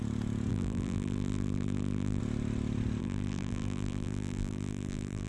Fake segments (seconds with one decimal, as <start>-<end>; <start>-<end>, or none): 0.5-2.2; 3.0-5.3